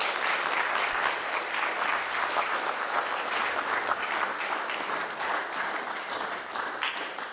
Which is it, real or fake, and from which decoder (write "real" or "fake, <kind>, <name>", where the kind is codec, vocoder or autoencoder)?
real